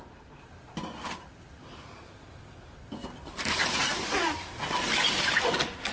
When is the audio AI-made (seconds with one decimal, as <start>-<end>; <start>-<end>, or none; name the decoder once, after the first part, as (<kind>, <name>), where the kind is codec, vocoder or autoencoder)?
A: none